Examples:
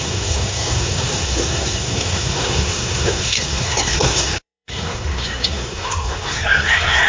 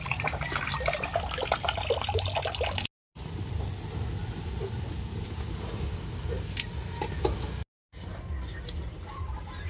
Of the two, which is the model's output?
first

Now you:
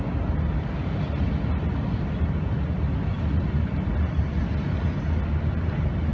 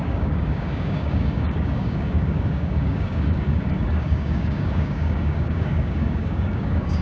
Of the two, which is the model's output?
second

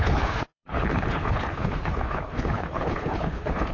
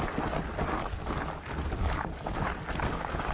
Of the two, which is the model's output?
first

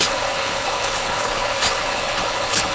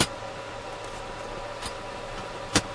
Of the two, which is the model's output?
first